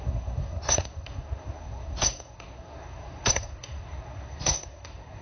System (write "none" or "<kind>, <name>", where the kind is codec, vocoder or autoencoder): codec, SNAC